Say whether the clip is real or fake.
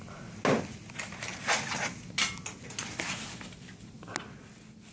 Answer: real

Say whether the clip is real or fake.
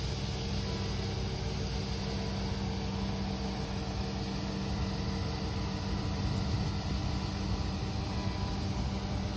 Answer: real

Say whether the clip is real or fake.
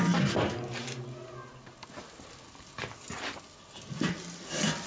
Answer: real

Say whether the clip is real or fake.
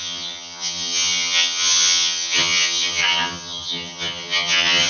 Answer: fake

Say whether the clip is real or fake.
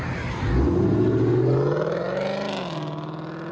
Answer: real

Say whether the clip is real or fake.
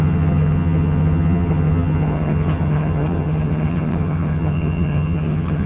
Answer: fake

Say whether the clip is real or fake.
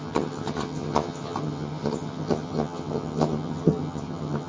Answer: fake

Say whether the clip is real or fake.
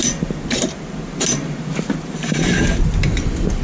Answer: real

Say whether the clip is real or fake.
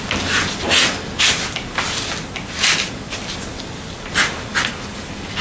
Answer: real